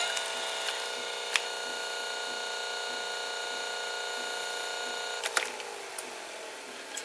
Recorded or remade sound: recorded